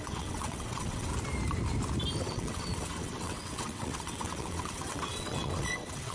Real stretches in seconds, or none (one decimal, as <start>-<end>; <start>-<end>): 1.1-2.2

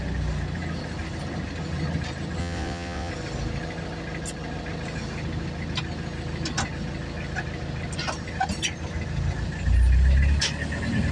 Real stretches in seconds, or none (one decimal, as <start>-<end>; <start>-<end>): 0.0-2.4; 3.1-11.1

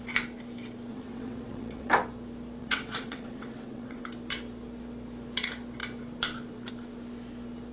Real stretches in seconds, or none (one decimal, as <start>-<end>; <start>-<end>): 0.0-0.9; 1.9-2.6; 4.0-7.7

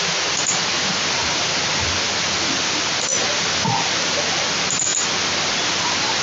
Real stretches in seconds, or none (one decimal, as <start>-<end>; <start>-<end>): 0.0-6.2

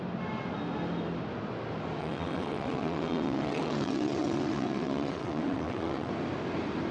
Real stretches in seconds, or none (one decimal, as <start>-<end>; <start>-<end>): 0.0-2.0; 6.1-6.9